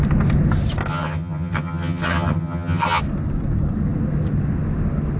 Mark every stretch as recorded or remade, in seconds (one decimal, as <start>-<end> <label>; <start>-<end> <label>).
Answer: 0.0-0.9 recorded; 0.9-3.0 remade; 3.0-5.2 recorded